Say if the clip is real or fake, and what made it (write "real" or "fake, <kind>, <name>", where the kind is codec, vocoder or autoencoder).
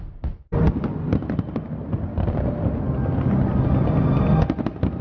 real